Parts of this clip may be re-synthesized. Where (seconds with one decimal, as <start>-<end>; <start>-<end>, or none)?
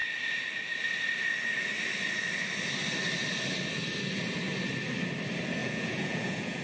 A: 5.6-6.6